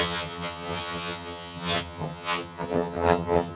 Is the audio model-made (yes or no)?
yes